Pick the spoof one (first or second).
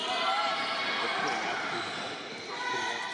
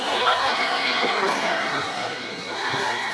second